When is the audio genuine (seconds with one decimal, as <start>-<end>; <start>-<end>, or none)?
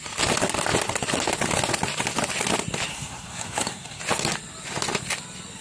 0.0-2.9; 4.0-5.6